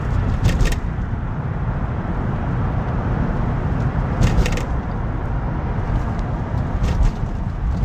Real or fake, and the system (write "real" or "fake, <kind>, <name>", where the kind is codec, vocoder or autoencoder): fake, vocoder, BigVGAN v2